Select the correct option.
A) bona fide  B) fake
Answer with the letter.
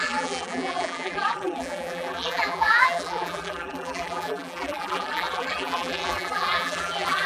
B